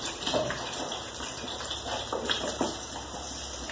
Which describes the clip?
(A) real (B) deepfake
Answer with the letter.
B